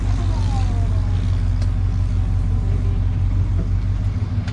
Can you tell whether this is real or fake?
real